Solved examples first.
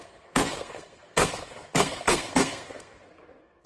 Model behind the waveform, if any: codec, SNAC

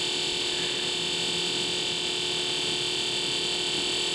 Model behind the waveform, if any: none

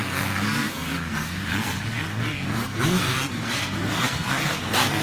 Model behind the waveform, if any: codec, SNAC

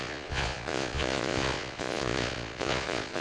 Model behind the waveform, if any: vocoder, Vocos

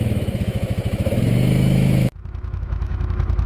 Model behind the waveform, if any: autoencoder, DAC-VAE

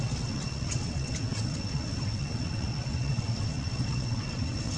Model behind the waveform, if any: vocoder, WaveNeXt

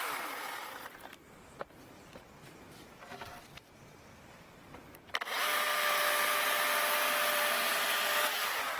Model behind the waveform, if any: none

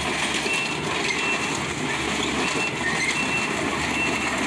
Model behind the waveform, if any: none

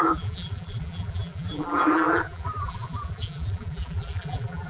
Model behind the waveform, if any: vocoder, BigVGAN v2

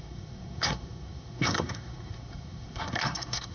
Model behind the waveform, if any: codec, SNAC